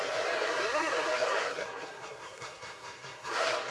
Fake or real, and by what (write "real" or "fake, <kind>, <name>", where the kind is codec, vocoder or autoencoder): fake, codec, SNAC